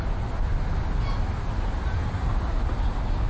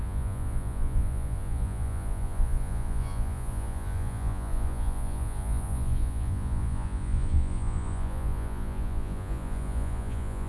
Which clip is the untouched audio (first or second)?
first